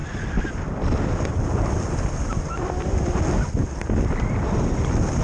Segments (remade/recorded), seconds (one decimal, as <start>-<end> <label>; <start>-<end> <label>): 0.0-5.2 recorded

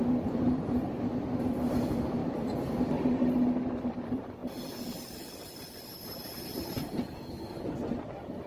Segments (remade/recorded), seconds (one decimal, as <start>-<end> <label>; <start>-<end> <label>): 0.0-2.2 remade; 2.2-3.9 recorded; 3.9-4.4 remade; 4.4-8.0 recorded; 8.0-8.5 remade